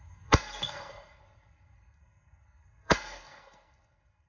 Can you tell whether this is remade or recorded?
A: remade